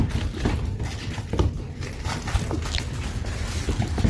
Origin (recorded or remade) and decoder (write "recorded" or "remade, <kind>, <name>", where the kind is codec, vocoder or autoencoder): recorded